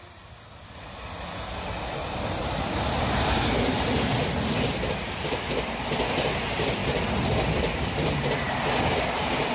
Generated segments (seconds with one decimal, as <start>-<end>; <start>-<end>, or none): none